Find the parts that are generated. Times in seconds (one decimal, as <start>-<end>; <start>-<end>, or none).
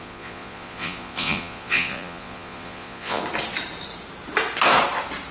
0.0-3.2